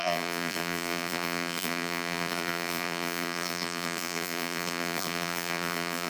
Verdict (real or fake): fake